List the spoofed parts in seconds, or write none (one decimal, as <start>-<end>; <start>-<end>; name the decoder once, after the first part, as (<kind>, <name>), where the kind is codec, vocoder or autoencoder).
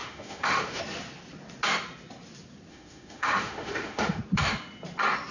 0.0-0.8 (autoencoder, DAC-VAE); 2.7-4.2